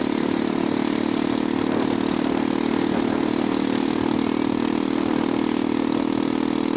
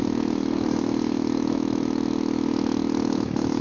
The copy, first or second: second